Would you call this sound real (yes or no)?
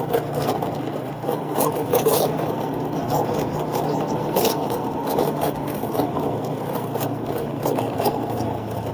no